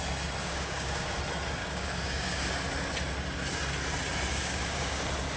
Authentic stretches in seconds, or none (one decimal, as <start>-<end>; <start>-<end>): 0.0-0.4; 1.2-1.6; 2.5-4.3; 5.0-5.4